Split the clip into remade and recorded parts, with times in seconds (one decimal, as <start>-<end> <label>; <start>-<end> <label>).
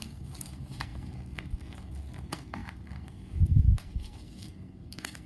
0.0-5.3 remade